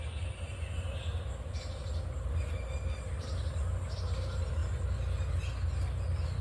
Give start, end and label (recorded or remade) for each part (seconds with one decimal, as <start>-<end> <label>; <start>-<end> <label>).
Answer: 0.0-6.4 recorded